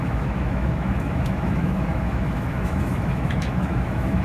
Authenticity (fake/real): fake